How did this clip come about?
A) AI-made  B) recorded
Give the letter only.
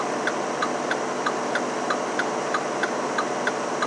B